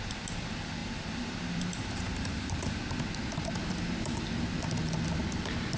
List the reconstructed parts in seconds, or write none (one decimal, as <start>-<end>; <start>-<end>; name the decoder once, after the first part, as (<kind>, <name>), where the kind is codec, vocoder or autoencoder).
0.8-2.8 (vocoder, BigVGAN v2); 3.6-4.5